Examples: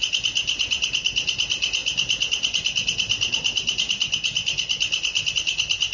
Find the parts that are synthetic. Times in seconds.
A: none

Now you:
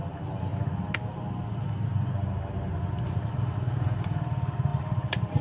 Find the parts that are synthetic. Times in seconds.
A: 0.0-0.5 (vocoder, BigVGAN v2); 1.1-5.4